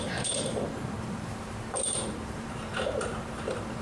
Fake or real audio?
fake